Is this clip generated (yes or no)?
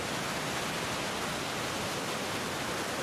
no